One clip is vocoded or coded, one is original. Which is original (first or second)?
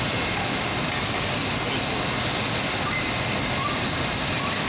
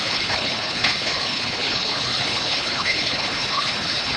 first